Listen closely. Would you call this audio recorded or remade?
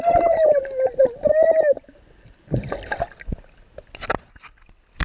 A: recorded